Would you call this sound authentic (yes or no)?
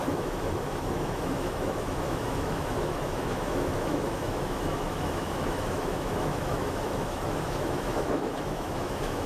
no